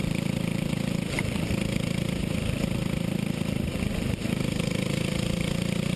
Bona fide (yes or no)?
no